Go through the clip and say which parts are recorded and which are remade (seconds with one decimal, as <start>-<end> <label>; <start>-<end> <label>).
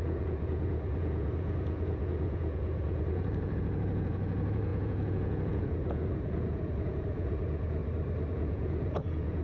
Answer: 0.0-7.8 remade; 7.8-8.3 recorded; 8.3-9.4 remade